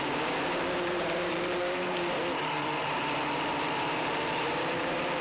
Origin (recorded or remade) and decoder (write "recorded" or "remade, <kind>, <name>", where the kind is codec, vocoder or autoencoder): remade, vocoder, BigVGAN v2